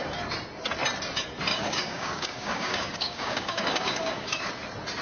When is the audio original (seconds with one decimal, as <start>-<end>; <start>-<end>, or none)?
0.0-1.5; 4.5-5.0